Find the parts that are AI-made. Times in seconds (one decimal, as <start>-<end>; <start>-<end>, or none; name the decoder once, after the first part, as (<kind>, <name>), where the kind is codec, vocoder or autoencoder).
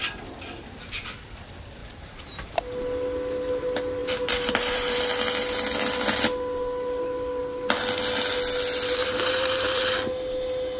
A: 1.8-2.6 (vocoder, BigVGAN v2); 4.0-5.0; 9.0-9.8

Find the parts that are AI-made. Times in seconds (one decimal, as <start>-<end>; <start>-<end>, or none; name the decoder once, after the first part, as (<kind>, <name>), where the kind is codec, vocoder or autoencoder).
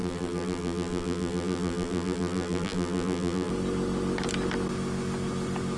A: 0.0-3.5 (vocoder, BigVGAN v2)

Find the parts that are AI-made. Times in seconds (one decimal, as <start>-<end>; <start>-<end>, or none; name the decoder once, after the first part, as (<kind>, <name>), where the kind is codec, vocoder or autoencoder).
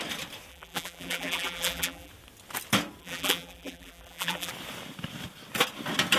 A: 0.5-2.1 (vocoder, BigVGAN v2); 3.0-4.5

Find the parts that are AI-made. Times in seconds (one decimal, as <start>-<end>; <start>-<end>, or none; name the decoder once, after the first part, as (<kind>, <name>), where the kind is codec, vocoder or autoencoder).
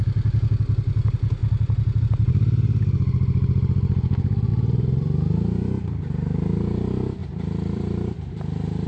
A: 1.4-2.0 (vocoder, BigVGAN v2); 4.5-5.3; 7.2-8.3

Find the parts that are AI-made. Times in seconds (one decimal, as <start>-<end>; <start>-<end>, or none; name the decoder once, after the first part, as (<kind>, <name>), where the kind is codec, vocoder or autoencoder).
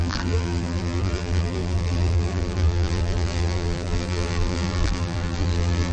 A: 0.0-5.9 (vocoder, BigVGAN v2)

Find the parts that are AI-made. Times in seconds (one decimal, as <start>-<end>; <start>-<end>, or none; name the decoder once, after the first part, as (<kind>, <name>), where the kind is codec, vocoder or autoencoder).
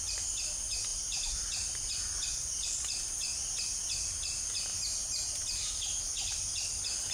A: 0.9-1.5 (vocoder, BigVGAN v2); 4.7-5.3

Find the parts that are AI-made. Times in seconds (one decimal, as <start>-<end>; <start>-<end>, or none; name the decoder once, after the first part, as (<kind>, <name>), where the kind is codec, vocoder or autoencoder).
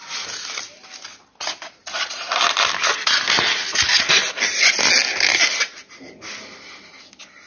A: 5.1-6.1 (vocoder, BigVGAN v2)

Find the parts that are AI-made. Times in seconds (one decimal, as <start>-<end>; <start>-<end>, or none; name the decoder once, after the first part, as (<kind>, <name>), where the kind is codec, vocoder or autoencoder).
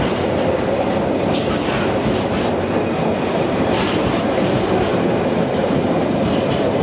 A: 3.3-4.5 (vocoder, BigVGAN v2); 4.9-6.8